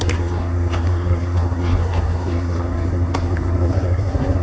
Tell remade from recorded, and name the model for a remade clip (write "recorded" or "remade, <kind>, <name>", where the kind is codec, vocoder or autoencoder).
remade, codec, SNAC